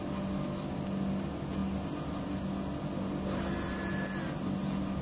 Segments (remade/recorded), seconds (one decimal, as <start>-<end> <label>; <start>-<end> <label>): 0.0-5.0 recorded